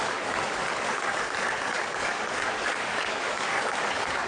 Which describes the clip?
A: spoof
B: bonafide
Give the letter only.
A